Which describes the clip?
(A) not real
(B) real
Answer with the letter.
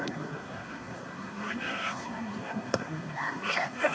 A